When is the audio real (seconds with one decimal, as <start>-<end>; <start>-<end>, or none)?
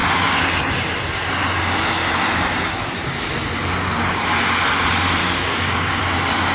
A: 0.0-5.2; 6.0-6.5